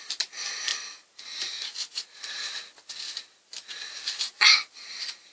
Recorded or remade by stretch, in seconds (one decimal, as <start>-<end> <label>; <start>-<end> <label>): 0.0-5.3 recorded